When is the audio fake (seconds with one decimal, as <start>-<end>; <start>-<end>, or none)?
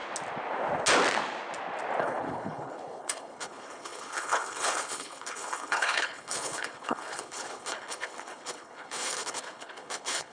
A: 2.0-10.3